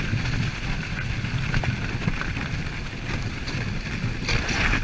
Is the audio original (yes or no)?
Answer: yes